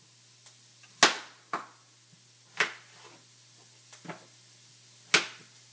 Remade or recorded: recorded